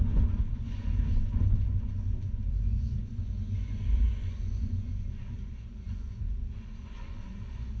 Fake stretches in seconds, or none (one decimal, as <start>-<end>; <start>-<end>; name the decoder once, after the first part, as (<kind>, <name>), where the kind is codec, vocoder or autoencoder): 0.0-7.8 (vocoder, Vocos)